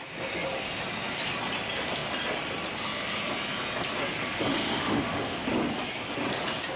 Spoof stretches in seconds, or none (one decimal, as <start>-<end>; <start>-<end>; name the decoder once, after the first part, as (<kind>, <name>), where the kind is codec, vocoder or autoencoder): 4.5-5.4 (autoencoder, DAC-VAE)